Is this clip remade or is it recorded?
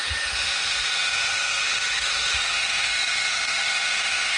remade